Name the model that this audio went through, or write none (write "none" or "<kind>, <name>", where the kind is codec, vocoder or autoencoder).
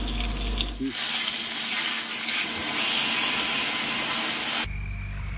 none